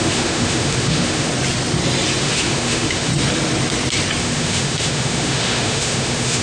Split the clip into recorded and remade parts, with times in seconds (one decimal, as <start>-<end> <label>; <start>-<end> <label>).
0.0-1.3 remade; 1.3-2.2 recorded; 2.2-3.1 remade; 3.1-4.2 recorded; 4.2-6.4 remade